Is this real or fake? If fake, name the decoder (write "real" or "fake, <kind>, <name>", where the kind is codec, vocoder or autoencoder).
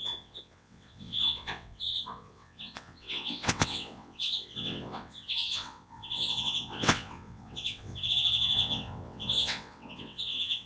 fake, vocoder, WaveNeXt